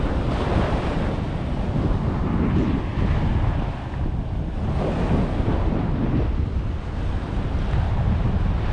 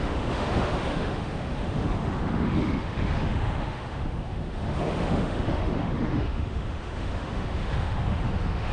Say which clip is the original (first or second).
first